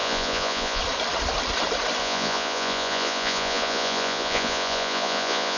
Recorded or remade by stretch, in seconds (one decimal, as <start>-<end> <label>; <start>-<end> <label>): 0.0-0.8 remade; 0.8-2.0 recorded; 2.0-5.6 remade